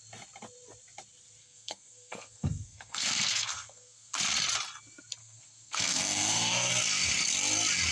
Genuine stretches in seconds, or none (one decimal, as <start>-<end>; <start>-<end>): 0.0-1.4; 4.1-5.2; 6.7-7.9